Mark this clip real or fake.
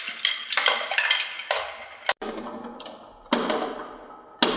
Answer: real